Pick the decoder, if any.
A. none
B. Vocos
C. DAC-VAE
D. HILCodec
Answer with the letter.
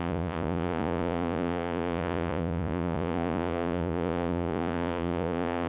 B